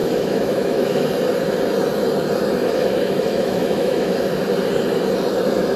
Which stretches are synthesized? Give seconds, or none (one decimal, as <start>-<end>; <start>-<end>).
0.0-1.1; 2.6-4.3